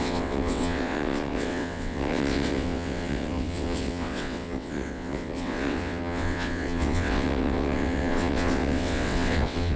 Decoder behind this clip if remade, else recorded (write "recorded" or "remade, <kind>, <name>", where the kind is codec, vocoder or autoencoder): remade, vocoder, WaveNeXt